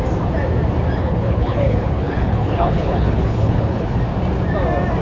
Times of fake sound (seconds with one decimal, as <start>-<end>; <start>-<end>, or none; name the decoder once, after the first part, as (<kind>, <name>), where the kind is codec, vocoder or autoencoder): 1.0-4.0 (codec, HILCodec)